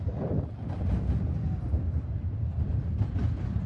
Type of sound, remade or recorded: recorded